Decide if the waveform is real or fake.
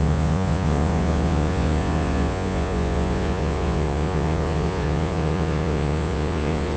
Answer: fake